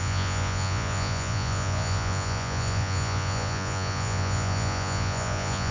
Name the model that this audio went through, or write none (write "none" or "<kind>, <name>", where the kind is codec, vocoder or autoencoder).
vocoder, Vocos